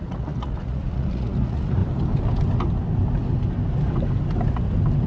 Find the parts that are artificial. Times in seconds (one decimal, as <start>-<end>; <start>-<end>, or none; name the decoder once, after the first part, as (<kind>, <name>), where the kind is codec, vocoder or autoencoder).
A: 0.0-1.8 (vocoder, Vocos)